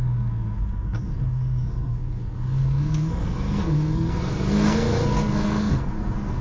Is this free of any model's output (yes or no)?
no